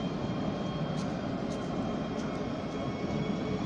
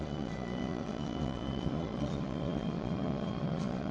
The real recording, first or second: first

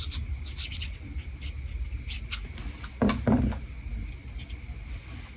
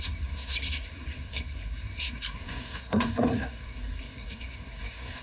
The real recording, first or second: first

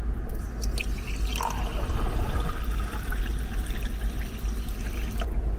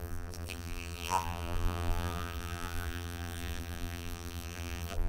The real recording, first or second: first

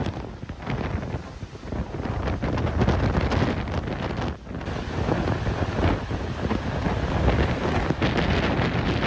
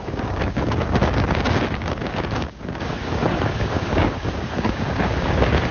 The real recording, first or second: first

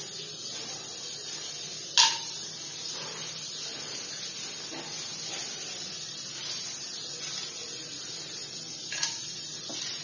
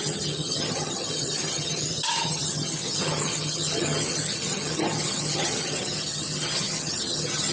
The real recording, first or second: first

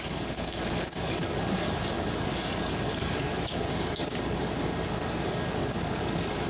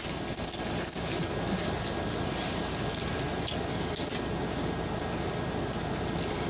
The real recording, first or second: second